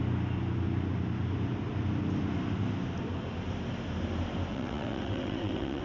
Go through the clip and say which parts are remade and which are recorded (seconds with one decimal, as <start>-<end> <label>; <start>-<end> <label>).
0.0-4.5 recorded; 4.5-5.8 remade